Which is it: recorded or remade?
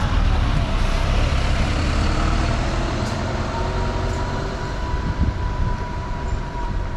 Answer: remade